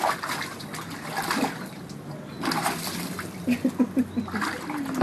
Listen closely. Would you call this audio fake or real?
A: real